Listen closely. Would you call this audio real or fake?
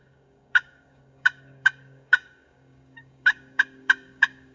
fake